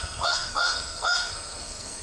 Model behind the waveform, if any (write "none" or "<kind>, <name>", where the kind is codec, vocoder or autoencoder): codec, SNAC